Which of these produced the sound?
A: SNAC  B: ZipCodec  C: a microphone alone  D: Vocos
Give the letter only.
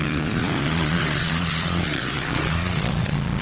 D